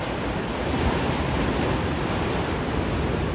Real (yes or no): yes